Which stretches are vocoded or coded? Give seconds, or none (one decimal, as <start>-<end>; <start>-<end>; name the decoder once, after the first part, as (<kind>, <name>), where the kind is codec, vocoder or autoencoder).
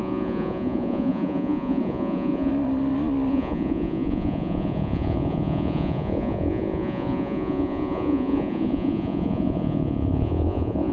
0.0-2.5 (vocoder, Vocos); 3.3-10.9